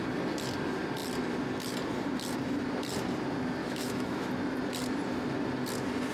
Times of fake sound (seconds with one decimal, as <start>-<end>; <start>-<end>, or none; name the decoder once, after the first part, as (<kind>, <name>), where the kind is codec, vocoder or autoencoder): 3.6-4.3 (autoencoder, DAC-VAE)